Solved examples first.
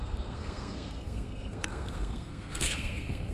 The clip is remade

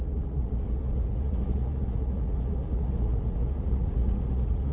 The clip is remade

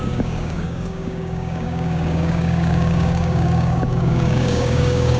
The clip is remade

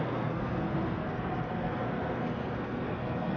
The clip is remade